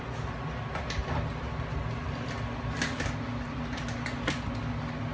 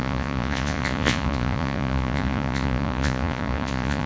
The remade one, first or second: second